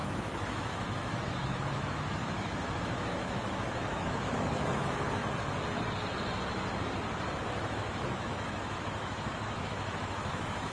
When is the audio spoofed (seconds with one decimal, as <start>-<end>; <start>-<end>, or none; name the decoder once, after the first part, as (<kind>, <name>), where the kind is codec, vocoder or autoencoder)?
0.0-5.2 (autoencoder, DAC-VAE); 7.4-10.7